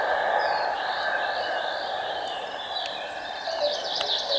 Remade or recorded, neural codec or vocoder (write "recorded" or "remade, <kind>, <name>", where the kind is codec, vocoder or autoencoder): recorded